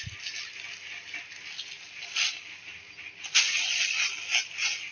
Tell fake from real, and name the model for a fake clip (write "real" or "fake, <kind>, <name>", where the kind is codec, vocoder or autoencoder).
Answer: real